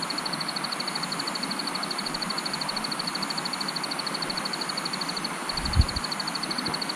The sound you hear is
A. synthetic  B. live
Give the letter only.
B